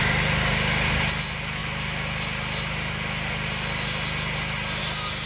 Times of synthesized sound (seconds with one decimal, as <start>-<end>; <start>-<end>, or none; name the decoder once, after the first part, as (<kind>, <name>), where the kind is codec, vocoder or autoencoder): none

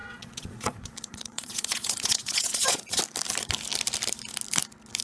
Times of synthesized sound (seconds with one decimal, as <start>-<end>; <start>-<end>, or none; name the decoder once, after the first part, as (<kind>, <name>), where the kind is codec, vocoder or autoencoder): 0.0-3.0 (vocoder, Vocos)

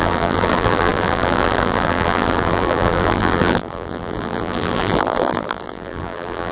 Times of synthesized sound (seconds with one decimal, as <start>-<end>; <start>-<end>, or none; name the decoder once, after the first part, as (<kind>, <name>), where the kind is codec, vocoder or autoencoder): 0.0-6.5 (vocoder, BigVGAN v2)